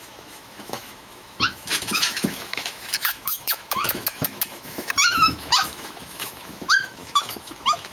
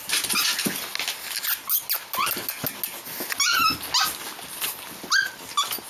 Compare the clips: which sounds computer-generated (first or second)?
first